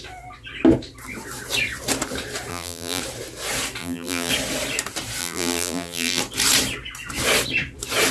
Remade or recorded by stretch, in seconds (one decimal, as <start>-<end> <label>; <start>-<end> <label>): 0.0-2.5 recorded; 2.5-3.0 remade; 3.0-3.8 recorded; 3.8-4.3 remade; 4.3-5.2 recorded; 5.2-6.2 remade; 6.2-8.1 recorded